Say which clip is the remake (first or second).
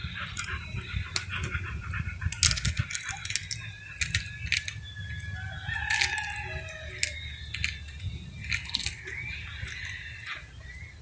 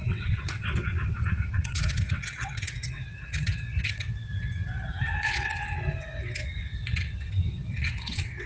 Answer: second